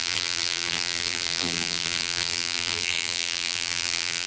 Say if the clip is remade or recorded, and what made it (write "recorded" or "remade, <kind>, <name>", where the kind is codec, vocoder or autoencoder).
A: remade, vocoder, BigVGAN v2